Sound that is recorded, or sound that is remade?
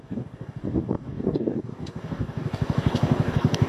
remade